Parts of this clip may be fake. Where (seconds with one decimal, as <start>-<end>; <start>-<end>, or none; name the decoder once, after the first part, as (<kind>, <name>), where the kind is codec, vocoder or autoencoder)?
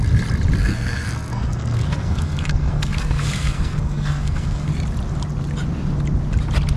0.6-4.7 (codec, SNAC)